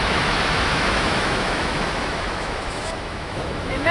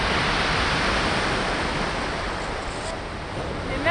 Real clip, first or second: second